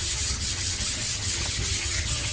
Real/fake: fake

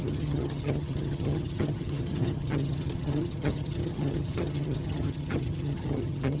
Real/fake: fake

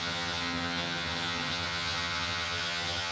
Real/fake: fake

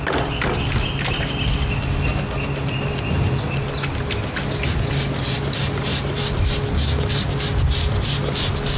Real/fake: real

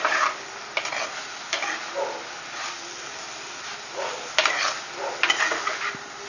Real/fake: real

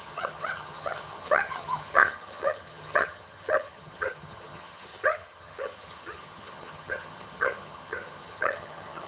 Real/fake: fake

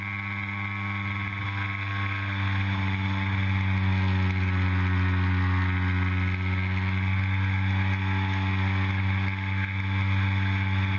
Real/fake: real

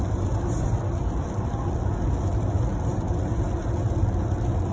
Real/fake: real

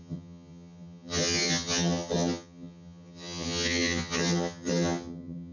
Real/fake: fake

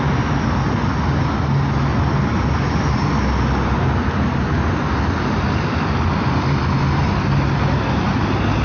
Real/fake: real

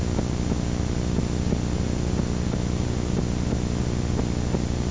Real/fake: real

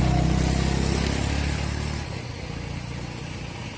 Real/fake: real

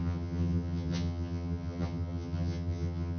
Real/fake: fake